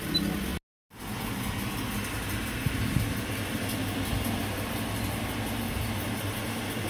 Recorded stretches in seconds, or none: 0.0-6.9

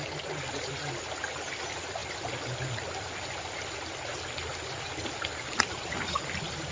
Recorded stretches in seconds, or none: 0.0-6.7

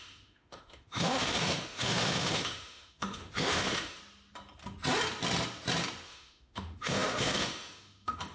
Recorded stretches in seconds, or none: 4.0-6.1